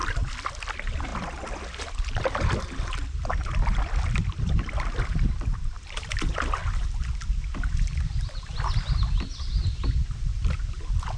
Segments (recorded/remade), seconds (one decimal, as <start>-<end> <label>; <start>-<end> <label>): 0.0-0.5 recorded; 0.5-1.1 remade; 1.1-2.9 recorded; 2.9-6.6 remade; 6.6-9.8 recorded; 9.8-11.2 remade